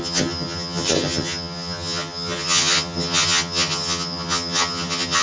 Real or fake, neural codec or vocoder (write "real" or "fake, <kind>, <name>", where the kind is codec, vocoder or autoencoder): fake, vocoder, HiFi-GAN